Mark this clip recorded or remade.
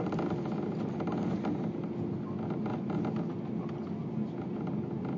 recorded